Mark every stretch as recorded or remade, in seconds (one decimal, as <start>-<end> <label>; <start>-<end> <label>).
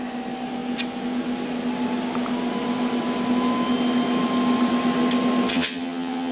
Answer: 0.0-5.5 recorded; 5.5-6.3 remade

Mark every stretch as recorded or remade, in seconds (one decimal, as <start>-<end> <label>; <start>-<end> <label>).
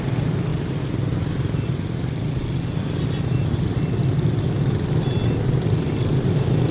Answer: 0.0-6.7 recorded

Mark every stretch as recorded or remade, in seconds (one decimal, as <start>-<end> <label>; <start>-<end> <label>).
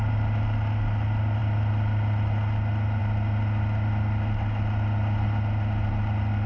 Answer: 0.0-6.5 recorded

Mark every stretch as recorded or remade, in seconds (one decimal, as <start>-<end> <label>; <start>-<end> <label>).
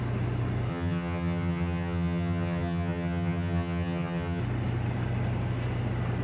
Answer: 0.0-0.7 recorded; 0.7-4.4 remade; 4.4-6.2 recorded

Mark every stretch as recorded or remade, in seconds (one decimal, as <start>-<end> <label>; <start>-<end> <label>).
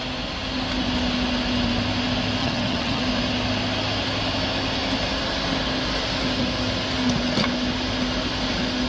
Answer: 0.0-2.4 recorded; 2.4-3.0 remade; 3.0-8.9 recorded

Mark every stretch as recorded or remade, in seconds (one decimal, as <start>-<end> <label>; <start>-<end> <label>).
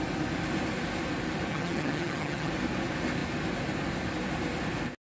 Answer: 0.0-1.5 recorded; 1.5-2.5 remade; 2.5-5.2 recorded